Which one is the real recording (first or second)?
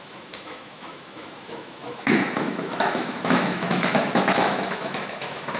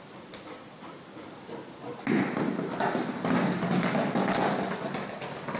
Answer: second